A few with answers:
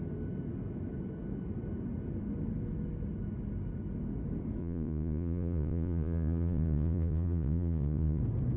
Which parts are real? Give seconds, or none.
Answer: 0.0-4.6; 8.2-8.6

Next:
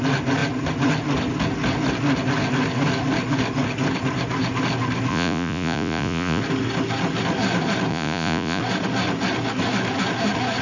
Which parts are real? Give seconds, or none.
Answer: 0.0-5.1; 6.4-7.9; 8.6-10.6

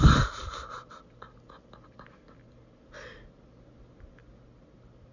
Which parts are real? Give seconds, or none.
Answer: 0.0-5.1

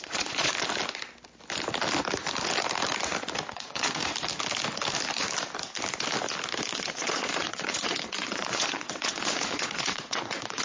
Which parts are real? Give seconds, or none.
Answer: 0.5-3.5; 4.0-6.7